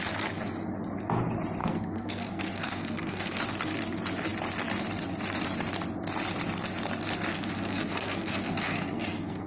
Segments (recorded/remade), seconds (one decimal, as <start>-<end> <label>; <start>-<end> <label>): 0.0-1.6 recorded; 1.6-3.4 remade; 3.4-7.3 recorded; 7.3-9.5 remade